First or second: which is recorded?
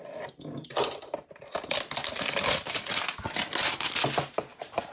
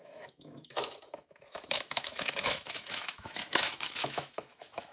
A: first